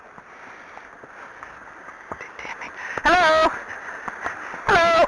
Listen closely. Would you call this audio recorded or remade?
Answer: recorded